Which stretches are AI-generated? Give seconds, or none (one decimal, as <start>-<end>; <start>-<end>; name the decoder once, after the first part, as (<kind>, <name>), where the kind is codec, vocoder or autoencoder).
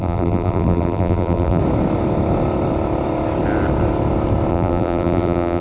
0.0-1.6 (vocoder, BigVGAN v2); 4.5-5.6